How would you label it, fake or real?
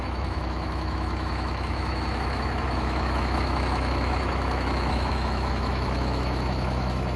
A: fake